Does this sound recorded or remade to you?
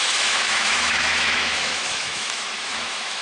remade